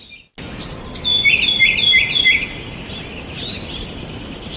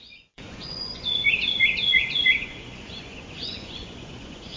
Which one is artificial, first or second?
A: second